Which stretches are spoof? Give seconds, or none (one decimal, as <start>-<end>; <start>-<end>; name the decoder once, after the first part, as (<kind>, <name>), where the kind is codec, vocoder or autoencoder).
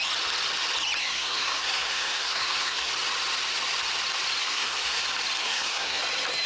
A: 1.0-2.9 (codec, SNAC); 4.4-5.0; 5.4-6.0